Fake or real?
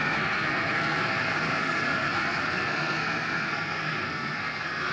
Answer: fake